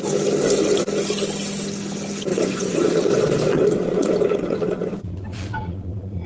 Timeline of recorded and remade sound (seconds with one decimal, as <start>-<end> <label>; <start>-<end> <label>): 0.0-2.3 recorded; 2.3-6.3 remade